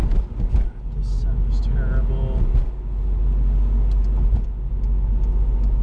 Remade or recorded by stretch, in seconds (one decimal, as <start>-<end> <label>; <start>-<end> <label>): 0.0-5.8 recorded